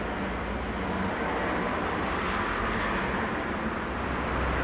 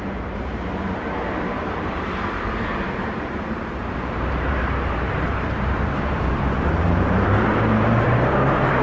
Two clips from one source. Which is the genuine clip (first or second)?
first